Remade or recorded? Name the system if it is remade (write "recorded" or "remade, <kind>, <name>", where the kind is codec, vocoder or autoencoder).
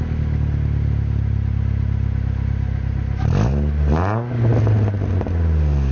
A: recorded